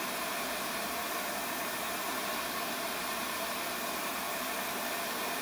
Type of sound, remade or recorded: remade